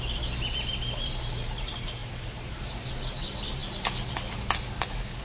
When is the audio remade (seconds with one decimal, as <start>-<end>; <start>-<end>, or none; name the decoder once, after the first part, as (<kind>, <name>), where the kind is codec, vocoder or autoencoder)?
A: none